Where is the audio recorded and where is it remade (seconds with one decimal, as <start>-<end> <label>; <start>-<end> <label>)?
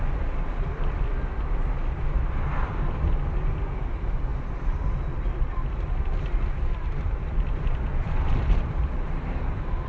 0.0-4.3 remade; 4.3-5.1 recorded; 5.1-9.9 remade